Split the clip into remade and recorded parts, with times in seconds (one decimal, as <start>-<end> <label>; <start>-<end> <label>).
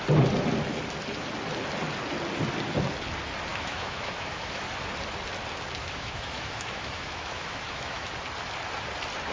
0.0-3.5 recorded; 3.5-4.7 remade; 4.7-5.8 recorded; 5.8-8.1 remade; 8.1-9.3 recorded